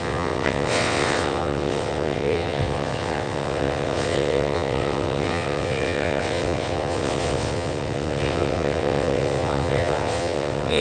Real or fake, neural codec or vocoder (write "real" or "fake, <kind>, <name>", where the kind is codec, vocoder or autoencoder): fake, vocoder, WaveNeXt